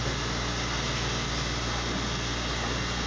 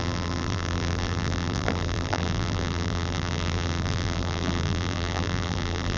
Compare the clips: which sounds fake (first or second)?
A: second